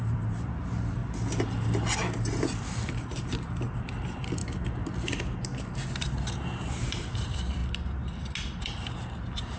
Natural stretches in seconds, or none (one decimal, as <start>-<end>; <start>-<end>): 1.0-2.9; 4.4-6.0; 7.6-8.6